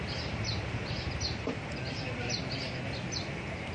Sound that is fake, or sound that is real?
real